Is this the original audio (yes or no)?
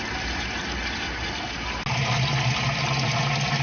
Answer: yes